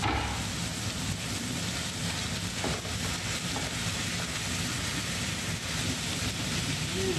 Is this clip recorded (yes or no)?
yes